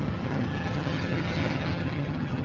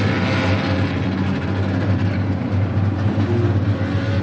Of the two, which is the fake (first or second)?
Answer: first